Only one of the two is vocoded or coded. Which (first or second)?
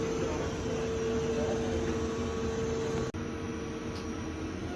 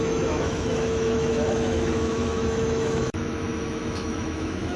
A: second